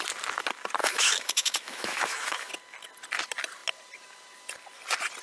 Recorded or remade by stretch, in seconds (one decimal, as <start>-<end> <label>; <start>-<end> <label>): 0.0-0.8 recorded; 0.8-2.5 remade; 2.5-5.2 recorded